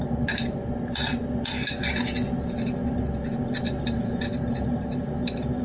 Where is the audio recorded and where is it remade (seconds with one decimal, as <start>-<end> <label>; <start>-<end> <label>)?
0.0-0.6 remade; 0.6-2.4 recorded; 2.4-2.8 remade; 2.8-3.8 recorded; 3.8-5.6 remade